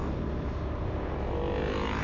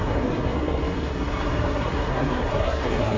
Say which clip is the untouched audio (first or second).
first